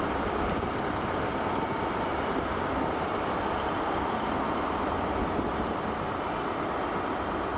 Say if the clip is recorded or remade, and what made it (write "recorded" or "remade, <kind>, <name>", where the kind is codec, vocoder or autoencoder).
recorded